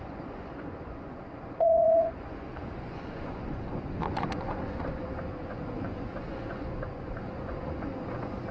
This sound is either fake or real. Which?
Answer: fake